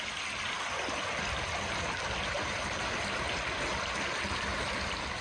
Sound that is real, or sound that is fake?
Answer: real